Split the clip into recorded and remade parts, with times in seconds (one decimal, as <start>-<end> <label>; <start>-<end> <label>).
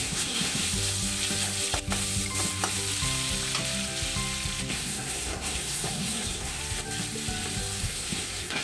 0.0-0.6 remade; 0.6-4.7 recorded; 4.7-6.6 remade; 6.6-7.8 recorded; 7.8-8.6 remade